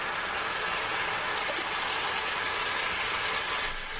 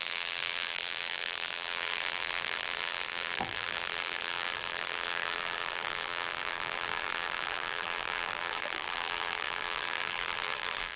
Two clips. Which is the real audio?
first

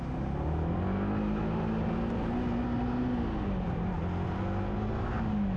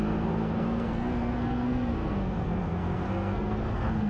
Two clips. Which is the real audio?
first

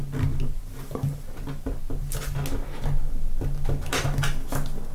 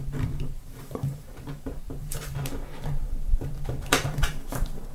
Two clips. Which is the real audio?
first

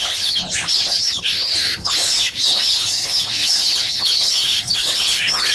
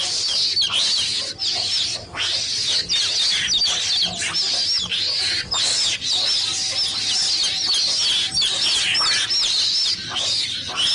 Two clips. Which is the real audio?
second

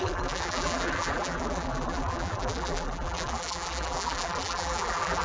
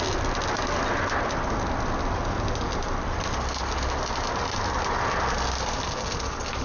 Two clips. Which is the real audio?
second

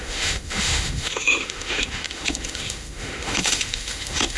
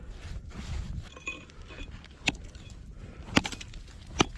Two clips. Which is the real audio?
second